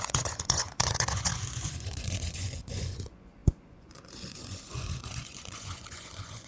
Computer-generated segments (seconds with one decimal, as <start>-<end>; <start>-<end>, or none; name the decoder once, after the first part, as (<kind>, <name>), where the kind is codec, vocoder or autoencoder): 0.0-6.5 (vocoder, Vocos)